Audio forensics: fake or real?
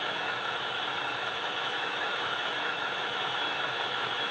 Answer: fake